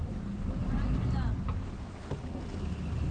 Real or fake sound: real